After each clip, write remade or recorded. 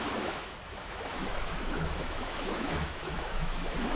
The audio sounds remade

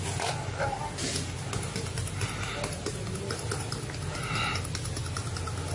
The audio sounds recorded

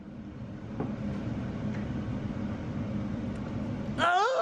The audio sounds recorded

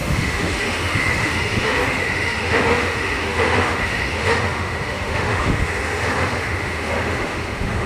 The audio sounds remade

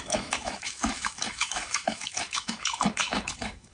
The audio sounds remade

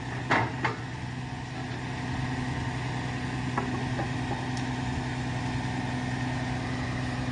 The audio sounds recorded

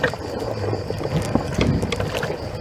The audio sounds recorded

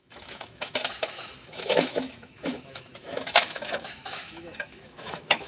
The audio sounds remade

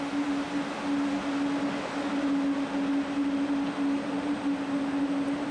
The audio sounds recorded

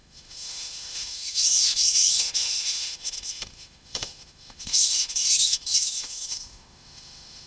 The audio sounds remade